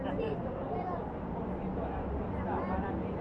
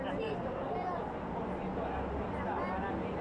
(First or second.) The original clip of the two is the second